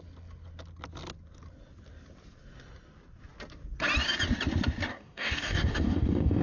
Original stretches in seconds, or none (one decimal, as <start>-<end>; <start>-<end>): 0.0-4.9